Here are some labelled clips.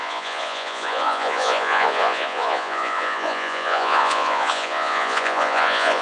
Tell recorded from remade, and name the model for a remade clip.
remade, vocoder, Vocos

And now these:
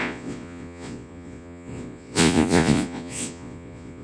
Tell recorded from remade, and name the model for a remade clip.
remade, vocoder, Vocos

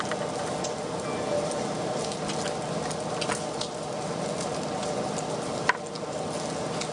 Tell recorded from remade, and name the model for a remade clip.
recorded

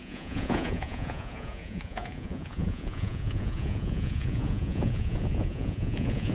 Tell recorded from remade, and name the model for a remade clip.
remade, vocoder, Vocos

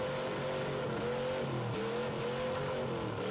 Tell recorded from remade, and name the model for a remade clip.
recorded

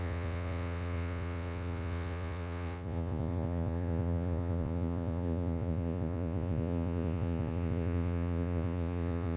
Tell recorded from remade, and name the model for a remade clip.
remade, vocoder, Vocos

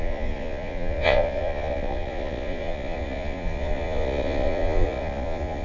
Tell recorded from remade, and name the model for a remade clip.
remade, vocoder, Vocos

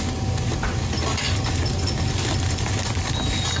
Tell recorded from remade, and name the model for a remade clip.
recorded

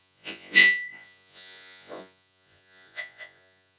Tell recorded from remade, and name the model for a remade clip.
remade, vocoder, Vocos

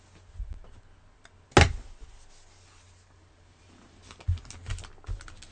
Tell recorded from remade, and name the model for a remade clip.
recorded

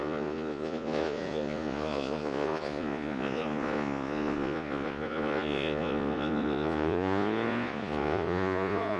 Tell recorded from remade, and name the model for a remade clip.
remade, vocoder, Vocos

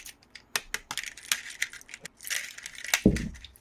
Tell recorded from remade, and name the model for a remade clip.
recorded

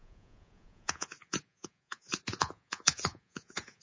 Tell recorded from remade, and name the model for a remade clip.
remade, vocoder, Vocos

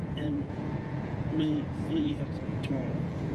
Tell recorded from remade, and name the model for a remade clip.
remade, vocoder, Vocos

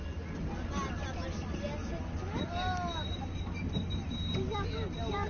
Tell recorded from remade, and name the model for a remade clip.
recorded